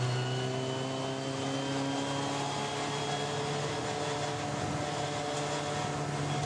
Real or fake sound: real